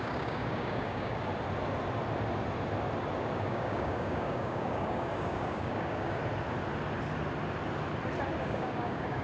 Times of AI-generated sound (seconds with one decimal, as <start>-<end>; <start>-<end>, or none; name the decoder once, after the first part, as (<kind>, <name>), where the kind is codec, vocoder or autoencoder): 0.0-1.3 (codec, DAC); 3.4-6.2; 8.4-9.2